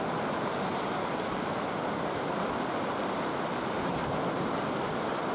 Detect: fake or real real